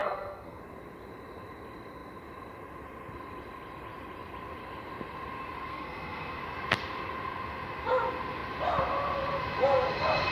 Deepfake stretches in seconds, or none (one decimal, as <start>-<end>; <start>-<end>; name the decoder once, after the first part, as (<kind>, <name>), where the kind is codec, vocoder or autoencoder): 0.0-0.6 (codec, SNAC); 5.7-6.4

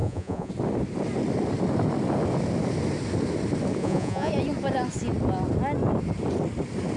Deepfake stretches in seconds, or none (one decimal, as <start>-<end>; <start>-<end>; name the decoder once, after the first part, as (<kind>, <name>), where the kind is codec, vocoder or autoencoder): 0.0-0.5 (vocoder, Vocos); 3.8-4.3

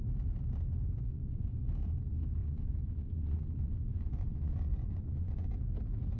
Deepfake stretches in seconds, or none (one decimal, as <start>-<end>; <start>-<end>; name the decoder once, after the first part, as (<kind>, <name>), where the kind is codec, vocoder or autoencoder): 1.1-1.7 (vocoder, Vocos); 2.4-5.5

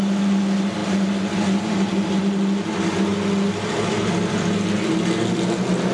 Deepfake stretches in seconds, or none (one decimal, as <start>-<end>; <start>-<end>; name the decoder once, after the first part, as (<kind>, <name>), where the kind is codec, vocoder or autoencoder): none